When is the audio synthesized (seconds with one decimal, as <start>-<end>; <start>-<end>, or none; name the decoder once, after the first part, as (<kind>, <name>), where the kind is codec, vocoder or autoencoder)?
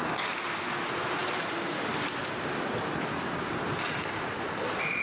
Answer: 1.2-4.2 (vocoder, BigVGAN v2)